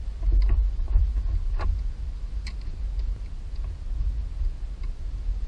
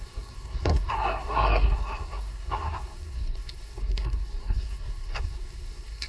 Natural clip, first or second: first